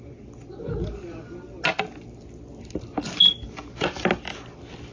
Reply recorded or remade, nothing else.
recorded